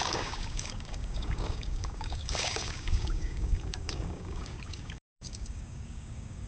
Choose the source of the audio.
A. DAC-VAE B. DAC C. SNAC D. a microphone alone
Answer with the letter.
B